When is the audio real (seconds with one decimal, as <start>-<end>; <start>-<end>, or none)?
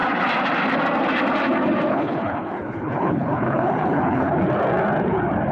0.0-1.9; 4.4-5.5